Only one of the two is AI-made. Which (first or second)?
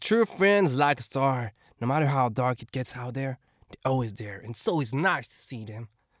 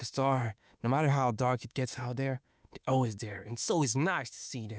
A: second